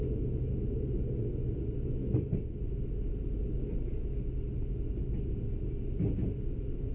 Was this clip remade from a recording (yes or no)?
no